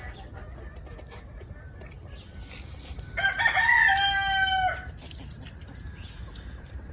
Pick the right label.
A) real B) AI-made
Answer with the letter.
A